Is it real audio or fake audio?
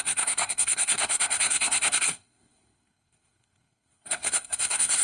fake